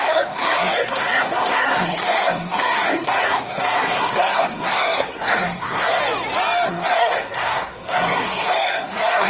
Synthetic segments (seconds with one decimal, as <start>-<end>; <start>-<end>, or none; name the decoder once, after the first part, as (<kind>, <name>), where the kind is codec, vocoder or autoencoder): 0.0-6.0 (codec, SNAC); 6.7-9.3